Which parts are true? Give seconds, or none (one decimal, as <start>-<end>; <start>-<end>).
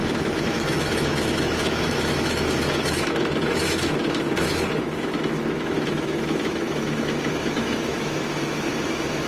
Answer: none